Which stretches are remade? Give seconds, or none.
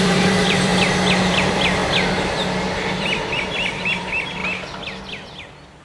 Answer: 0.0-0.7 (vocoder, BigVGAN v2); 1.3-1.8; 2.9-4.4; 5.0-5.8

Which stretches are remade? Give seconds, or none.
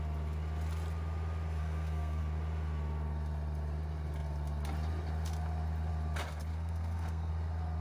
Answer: 1.6-2.2 (codec, SNAC); 6.5-7.3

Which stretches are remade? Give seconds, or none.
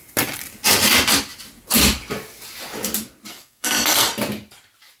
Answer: 3.3-4.1 (codec, SNAC)